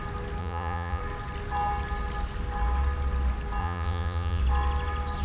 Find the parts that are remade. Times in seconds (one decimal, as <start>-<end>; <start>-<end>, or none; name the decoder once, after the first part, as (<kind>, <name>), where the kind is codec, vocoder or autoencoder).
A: 0.4-1.0 (vocoder, Vocos); 3.6-4.4